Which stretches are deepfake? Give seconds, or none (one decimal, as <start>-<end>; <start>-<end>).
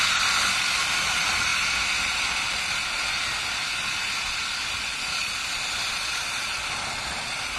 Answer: none